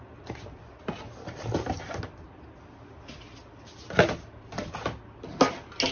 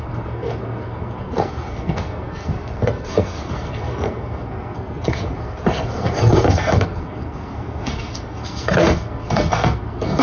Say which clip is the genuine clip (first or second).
first